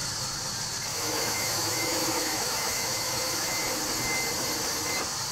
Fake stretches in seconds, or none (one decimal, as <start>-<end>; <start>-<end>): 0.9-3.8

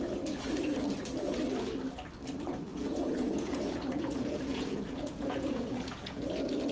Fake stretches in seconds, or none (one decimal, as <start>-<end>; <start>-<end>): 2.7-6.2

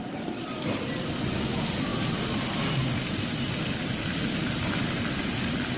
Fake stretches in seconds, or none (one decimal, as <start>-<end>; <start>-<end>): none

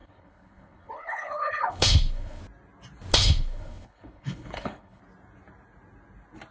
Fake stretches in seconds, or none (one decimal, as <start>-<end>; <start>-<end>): 0.0-2.4; 3.2-5.0